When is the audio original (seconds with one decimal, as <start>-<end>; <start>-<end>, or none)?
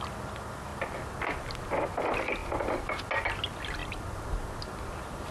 0.0-0.7; 1.7-5.3